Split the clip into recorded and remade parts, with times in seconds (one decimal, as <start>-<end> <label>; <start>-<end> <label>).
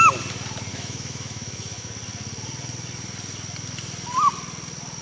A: 0.0-0.7 recorded; 0.7-1.9 remade; 1.9-5.0 recorded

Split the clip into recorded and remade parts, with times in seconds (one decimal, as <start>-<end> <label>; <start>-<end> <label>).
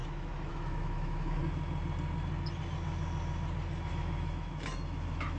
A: 0.0-1.4 remade; 1.4-3.9 recorded; 3.9-5.4 remade